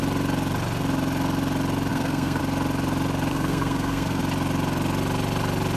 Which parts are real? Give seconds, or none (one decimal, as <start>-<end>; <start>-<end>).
0.0-1.9; 2.4-3.3; 4.2-5.8